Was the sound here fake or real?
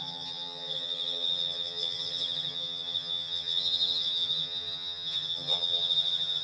fake